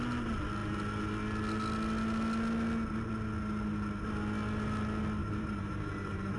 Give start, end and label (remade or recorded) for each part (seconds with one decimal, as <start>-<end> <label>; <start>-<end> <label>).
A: 0.0-5.2 recorded; 5.2-6.4 remade